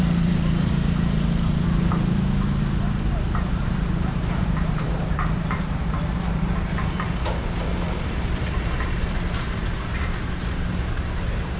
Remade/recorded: remade